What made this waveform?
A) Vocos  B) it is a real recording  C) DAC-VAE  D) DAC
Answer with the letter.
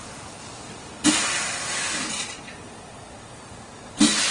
B